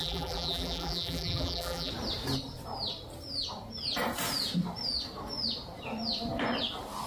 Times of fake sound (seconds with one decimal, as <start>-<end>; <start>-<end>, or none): 0.0-1.9